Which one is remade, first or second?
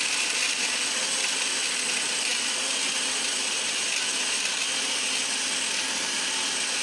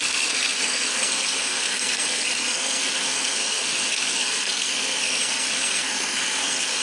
second